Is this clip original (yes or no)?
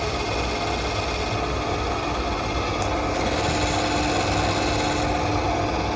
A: yes